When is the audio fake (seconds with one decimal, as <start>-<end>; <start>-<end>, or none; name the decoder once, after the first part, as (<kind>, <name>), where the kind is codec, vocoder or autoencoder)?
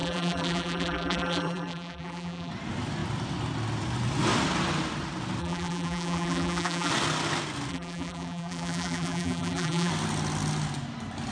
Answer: 0.0-2.5 (vocoder, BigVGAN v2); 5.4-6.9; 7.7-9.9